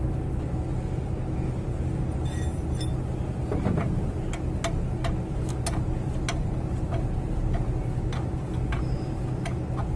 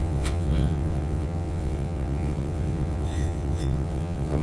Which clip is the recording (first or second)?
first